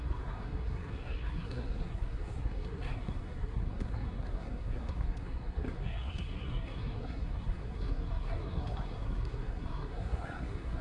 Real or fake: fake